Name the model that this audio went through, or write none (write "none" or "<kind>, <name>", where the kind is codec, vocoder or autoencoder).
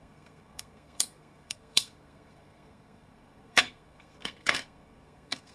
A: codec, SNAC